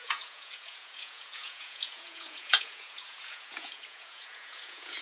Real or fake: fake